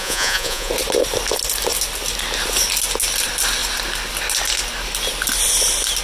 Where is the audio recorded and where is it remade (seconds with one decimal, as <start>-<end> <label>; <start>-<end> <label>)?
0.0-0.7 remade; 0.7-6.0 recorded